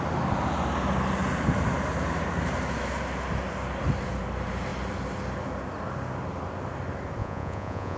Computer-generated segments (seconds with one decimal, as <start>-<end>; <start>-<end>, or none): 7.2-8.0